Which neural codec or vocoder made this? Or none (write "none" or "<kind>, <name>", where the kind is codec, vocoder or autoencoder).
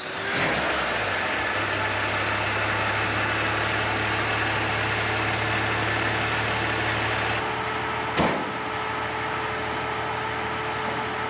none